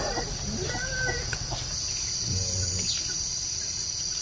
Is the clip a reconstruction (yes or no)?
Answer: no